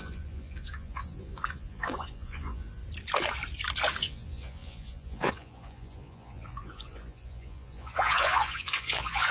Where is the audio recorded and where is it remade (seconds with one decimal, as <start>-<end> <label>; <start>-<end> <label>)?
0.0-2.8 remade; 2.8-4.0 recorded; 4.0-9.3 remade